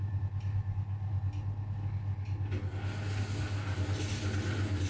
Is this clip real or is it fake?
real